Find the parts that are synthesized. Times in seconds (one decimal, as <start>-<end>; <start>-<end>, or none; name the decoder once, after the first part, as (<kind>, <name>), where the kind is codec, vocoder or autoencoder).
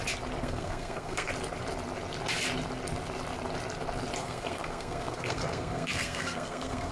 0.4-1.3 (codec, SNAC); 4.2-6.9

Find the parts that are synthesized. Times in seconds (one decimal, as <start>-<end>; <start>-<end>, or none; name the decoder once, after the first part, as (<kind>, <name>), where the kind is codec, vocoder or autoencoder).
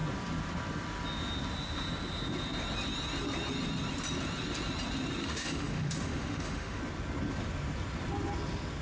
5.2-6.8 (autoencoder, DAC-VAE)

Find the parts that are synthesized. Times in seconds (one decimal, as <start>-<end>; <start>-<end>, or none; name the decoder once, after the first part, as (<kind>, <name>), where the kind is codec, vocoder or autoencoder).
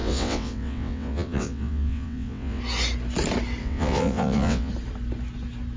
0.0-2.6 (vocoder, WaveNeXt); 3.6-4.7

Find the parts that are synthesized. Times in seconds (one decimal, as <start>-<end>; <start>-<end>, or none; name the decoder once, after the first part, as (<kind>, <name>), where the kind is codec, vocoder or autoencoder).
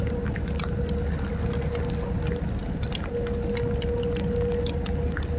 none